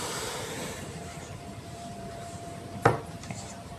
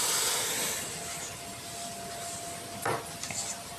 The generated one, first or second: first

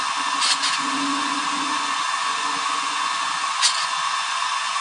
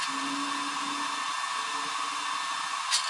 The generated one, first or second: first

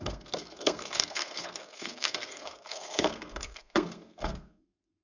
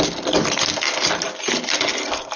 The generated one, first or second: first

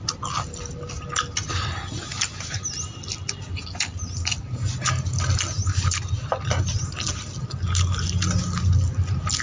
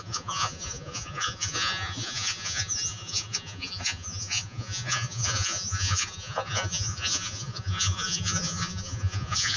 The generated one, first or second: second